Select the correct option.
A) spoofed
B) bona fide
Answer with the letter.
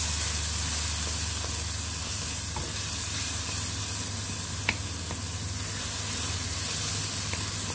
B